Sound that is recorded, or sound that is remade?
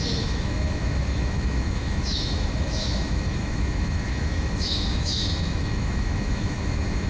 remade